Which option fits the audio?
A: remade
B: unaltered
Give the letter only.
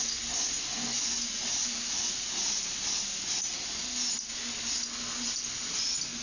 B